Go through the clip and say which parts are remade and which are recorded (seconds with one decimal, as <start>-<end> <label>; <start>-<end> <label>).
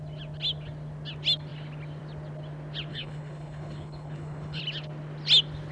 0.0-2.9 recorded; 2.9-4.6 remade; 4.6-5.7 recorded